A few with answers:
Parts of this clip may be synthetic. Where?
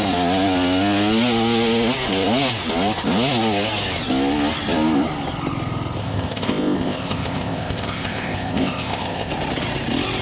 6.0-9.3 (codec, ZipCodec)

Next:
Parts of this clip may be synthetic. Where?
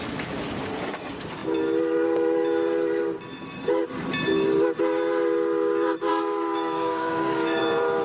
6.1-7.6 (codec, DAC)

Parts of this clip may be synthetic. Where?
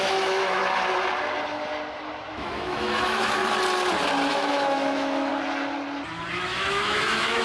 0.0-0.6 (autoencoder, DAC-VAE); 2.3-3.4; 4.3-5.3; 6.3-7.4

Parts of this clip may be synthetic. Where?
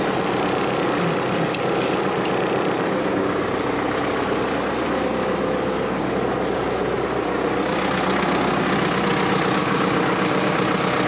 9.6-10.5 (codec, DAC)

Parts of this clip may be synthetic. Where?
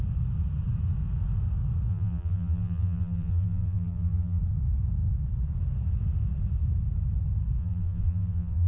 1.9-4.4 (vocoder, BigVGAN v2); 7.6-8.7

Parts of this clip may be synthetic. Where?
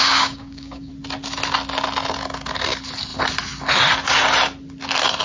0.0-0.9 (codec, DAC)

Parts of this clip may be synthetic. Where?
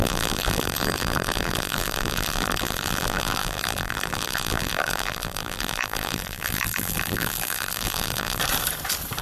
0.0-8.4 (vocoder, BigVGAN v2)